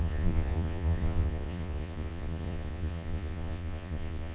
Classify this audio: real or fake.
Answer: fake